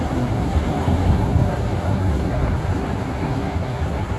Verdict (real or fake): fake